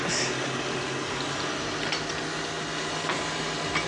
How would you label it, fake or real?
real